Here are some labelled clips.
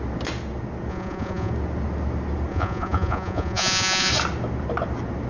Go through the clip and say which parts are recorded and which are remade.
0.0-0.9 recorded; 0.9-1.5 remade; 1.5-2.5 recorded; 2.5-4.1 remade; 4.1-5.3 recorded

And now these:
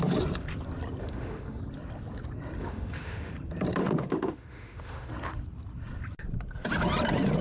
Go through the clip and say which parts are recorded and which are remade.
0.0-1.0 recorded; 1.0-1.6 remade; 1.6-2.6 recorded; 2.6-3.3 remade; 3.3-3.8 recorded; 3.8-5.1 remade; 5.1-7.4 recorded

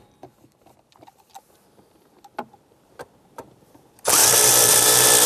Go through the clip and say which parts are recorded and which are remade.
0.0-5.3 remade

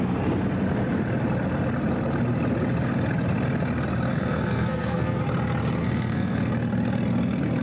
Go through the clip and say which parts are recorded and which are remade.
0.0-4.1 recorded; 4.1-5.2 remade; 5.2-5.8 recorded; 5.8-6.5 remade; 6.5-7.6 recorded

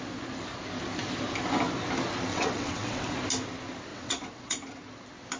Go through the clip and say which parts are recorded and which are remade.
0.0-2.3 recorded; 2.3-3.0 remade; 3.0-3.9 recorded; 3.9-4.8 remade; 4.8-5.4 recorded

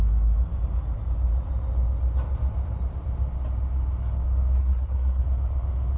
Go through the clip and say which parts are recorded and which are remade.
0.0-4.6 recorded; 4.6-5.2 remade; 5.2-6.0 recorded